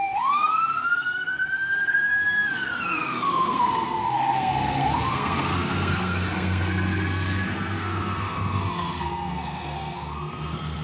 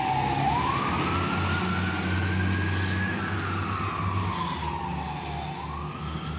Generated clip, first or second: first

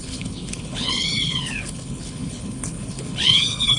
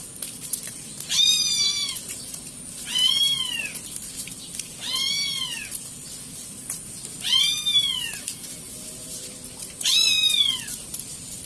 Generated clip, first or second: first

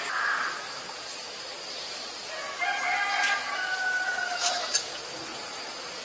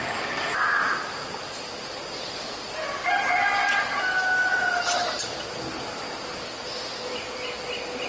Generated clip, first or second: first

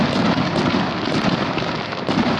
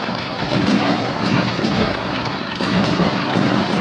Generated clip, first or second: second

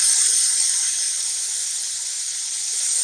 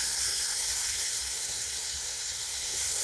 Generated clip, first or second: second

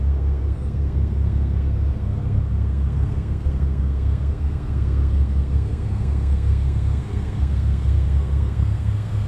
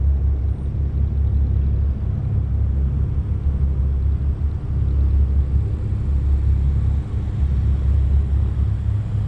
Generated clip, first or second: first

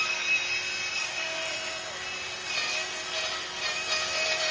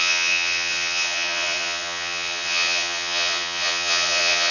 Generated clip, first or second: second